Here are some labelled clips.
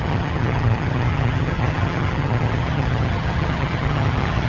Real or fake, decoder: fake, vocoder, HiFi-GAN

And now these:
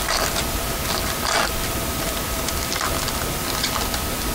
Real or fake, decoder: real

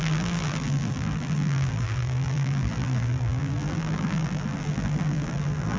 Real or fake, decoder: fake, vocoder, BigVGAN v2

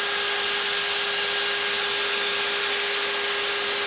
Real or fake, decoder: real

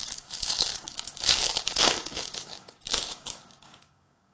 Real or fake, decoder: fake, codec, DAC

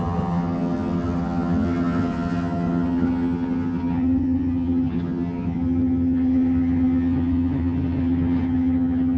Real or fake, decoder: fake, vocoder, HiFi-GAN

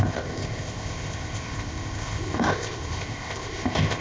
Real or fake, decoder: fake, codec, ZipCodec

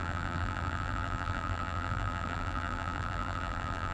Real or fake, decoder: fake, vocoder, BigVGAN v2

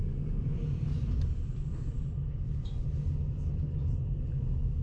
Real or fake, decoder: real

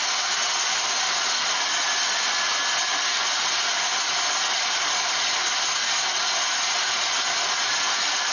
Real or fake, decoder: real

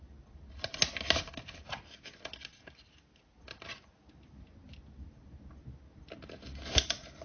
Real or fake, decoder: real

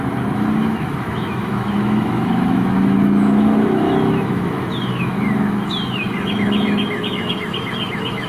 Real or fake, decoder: fake, autoencoder, DAC-VAE